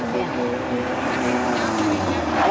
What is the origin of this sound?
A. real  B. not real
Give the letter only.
B